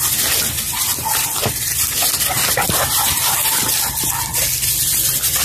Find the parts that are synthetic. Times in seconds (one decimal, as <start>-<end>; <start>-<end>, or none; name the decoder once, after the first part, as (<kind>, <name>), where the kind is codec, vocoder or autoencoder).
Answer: none